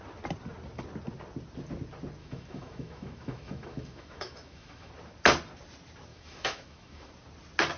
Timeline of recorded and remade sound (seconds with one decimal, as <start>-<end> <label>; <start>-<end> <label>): 0.0-2.2 recorded; 2.2-4.9 remade; 4.9-6.1 recorded; 6.1-7.1 remade; 7.1-7.8 recorded